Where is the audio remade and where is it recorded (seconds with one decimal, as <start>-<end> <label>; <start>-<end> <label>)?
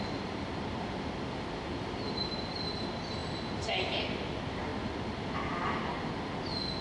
0.0-6.8 recorded